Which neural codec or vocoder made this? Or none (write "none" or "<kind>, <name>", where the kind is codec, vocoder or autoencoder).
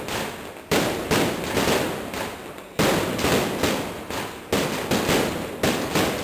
none